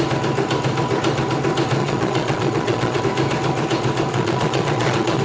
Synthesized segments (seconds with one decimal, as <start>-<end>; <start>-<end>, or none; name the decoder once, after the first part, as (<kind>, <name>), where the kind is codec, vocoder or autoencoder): 1.8-3.0 (vocoder, Vocos); 4.1-5.2